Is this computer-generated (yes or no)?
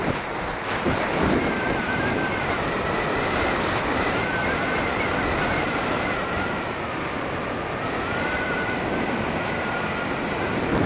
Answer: no